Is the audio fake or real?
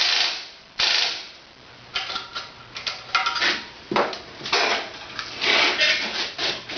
real